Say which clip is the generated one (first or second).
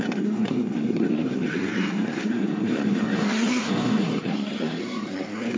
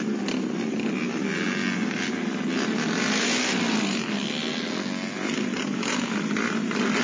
first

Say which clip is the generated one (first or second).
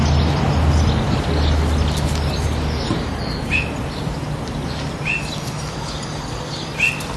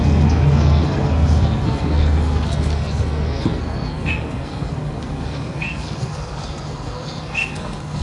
second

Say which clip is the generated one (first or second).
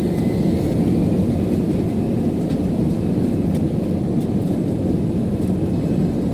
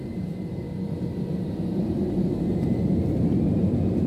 second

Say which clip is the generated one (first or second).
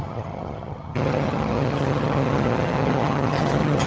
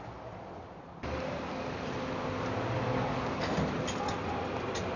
first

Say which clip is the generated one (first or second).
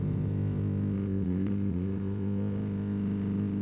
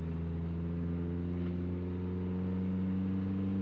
first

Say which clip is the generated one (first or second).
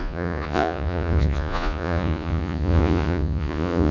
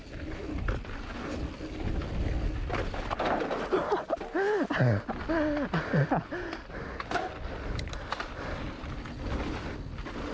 first